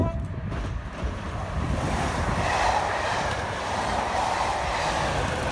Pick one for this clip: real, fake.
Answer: fake